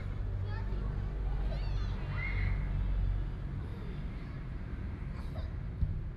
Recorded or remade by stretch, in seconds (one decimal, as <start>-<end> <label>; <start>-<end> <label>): 0.0-3.7 recorded; 3.7-5.2 remade; 5.2-6.2 recorded